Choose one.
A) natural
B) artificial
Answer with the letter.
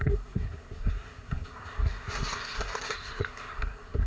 B